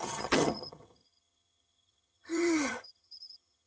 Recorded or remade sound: remade